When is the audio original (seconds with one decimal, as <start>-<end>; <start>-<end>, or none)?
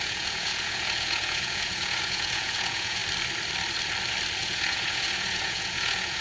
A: 3.0-4.4